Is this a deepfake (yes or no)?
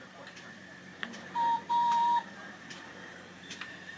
yes